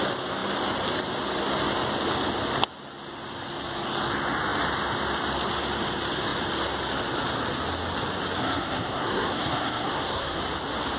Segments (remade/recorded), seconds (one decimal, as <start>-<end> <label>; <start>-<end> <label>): 0.0-8.4 recorded; 8.4-10.4 remade; 10.4-11.0 recorded